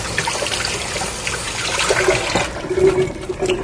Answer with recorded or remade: recorded